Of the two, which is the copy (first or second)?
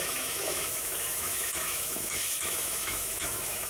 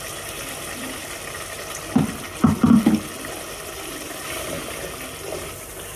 first